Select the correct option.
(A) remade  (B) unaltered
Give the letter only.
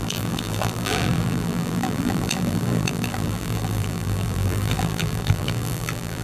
A